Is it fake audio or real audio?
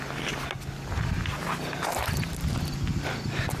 real